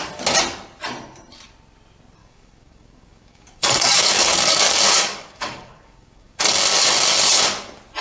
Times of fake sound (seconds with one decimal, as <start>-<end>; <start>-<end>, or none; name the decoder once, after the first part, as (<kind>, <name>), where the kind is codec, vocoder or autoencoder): 2.2-6.5 (codec, DAC)